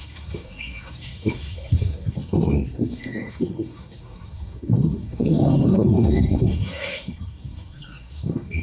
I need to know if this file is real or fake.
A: fake